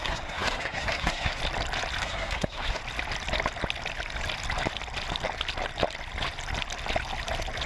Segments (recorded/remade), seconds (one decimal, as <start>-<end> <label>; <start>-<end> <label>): 0.0-1.4 remade; 1.4-2.0 recorded; 2.0-2.8 remade; 2.8-7.7 recorded